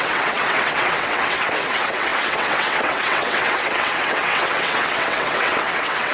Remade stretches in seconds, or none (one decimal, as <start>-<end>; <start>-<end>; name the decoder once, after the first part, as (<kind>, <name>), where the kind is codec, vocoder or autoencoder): 0.0-6.1 (vocoder, WaveNeXt)